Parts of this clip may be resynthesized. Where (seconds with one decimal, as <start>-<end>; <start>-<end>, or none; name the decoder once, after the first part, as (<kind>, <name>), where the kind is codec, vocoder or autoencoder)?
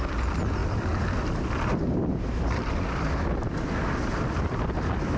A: none